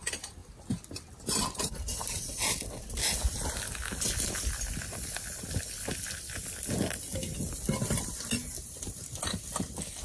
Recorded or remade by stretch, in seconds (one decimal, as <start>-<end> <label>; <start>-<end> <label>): 0.0-10.0 recorded